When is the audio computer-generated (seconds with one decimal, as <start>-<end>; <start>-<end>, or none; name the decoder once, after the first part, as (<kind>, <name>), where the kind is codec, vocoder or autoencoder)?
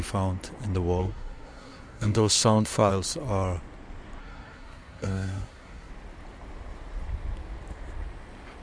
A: 1.0-2.9 (codec, SNAC); 4.2-5.9